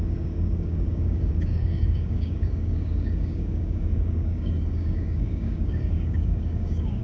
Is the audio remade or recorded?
remade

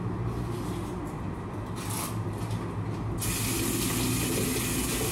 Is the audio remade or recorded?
recorded